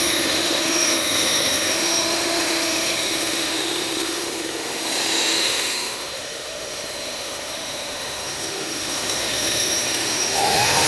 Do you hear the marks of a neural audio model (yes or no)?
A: yes